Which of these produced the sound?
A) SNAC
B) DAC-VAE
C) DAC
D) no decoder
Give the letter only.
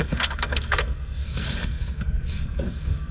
A